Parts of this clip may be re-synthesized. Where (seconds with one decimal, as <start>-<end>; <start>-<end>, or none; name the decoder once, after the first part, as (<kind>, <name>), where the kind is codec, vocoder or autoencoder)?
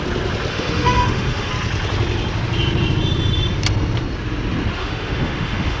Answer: 0.5-1.5 (autoencoder, DAC-VAE); 4.8-5.8